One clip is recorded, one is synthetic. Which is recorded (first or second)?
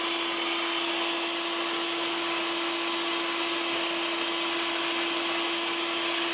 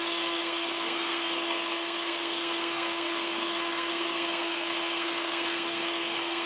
first